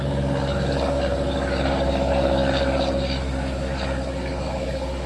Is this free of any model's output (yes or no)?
no